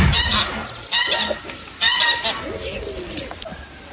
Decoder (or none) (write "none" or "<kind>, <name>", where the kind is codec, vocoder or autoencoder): none